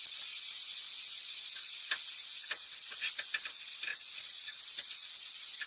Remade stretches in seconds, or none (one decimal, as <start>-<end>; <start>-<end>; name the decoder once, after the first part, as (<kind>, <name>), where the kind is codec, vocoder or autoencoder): 3.9-4.6 (vocoder, Vocos)